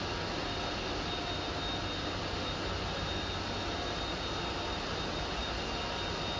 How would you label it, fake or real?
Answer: real